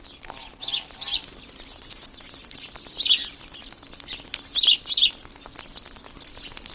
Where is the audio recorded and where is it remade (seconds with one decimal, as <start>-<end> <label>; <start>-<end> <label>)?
0.0-1.7 recorded; 1.7-2.3 remade; 2.3-6.7 recorded